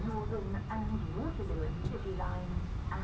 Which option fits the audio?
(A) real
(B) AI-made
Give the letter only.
A